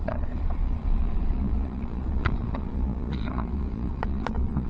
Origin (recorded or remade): remade